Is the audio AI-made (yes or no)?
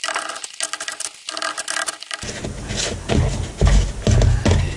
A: no